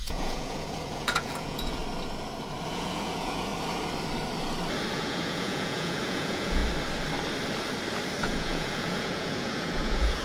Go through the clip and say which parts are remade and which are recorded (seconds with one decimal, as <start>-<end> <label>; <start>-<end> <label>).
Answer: 0.0-1.8 remade; 1.8-2.7 recorded; 2.7-3.5 remade; 3.5-4.9 recorded; 4.9-6.6 remade; 6.6-8.2 recorded; 8.2-10.2 remade